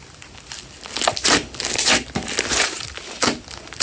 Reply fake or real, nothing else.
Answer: real